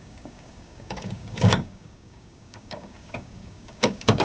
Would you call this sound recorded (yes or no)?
no